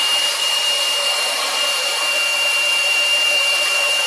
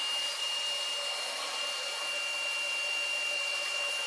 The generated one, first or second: first